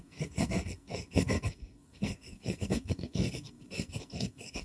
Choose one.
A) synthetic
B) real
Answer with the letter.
A